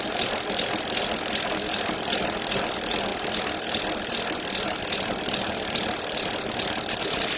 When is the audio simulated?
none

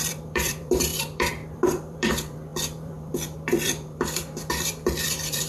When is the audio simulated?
0.0-5.5 (vocoder, BigVGAN v2)

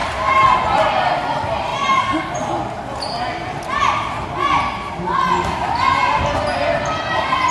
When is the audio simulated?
none